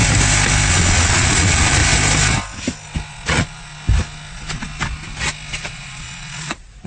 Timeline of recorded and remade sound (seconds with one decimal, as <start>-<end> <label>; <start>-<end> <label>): 0.0-0.7 recorded; 0.7-1.8 remade; 1.8-3.1 recorded; 3.1-3.7 remade; 3.7-4.3 recorded; 4.3-4.7 remade; 4.7-5.5 recorded; 5.5-6.9 remade